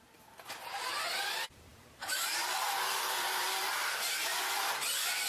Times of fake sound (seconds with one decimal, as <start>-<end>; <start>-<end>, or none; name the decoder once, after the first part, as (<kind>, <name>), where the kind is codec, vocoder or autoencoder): none